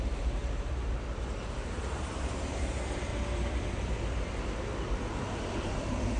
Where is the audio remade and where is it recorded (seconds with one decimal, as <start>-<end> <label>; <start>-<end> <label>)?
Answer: 0.0-3.1 remade; 3.1-5.0 recorded; 5.0-6.2 remade